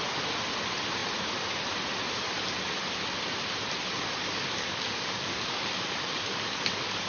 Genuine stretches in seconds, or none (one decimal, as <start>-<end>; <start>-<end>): 0.0-4.2